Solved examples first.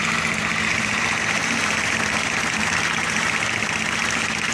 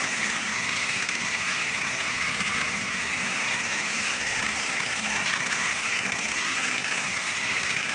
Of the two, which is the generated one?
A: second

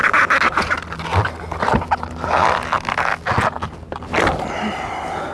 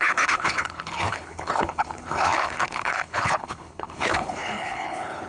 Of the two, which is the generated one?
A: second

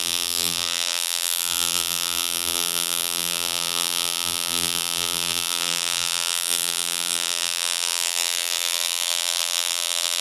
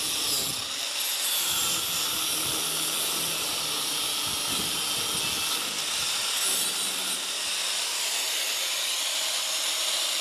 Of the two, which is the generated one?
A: first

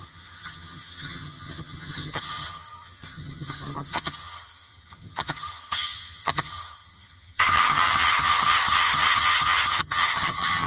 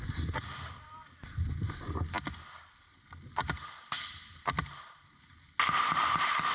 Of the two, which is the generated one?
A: first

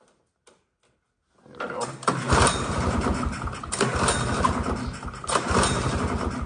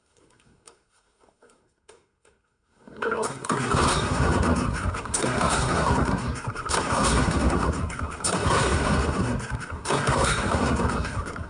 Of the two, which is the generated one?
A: second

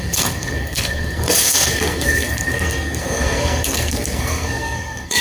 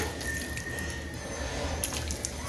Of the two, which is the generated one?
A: first